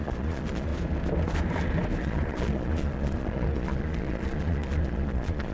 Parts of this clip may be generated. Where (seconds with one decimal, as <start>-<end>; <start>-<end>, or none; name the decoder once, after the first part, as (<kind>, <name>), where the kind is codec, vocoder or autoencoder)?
0.0-0.7 (vocoder, Vocos); 2.0-5.5